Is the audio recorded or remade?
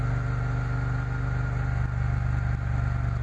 recorded